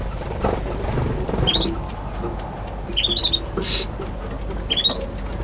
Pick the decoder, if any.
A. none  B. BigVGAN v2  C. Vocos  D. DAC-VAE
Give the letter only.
A